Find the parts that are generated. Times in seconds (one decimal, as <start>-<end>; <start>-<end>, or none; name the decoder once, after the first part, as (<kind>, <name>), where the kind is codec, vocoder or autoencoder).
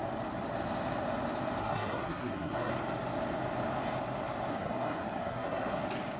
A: 1.6-2.7 (codec, SNAC); 4.5-5.8